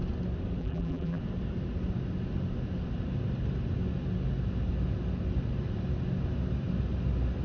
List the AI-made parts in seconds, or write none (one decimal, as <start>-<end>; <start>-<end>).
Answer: 0.6-1.2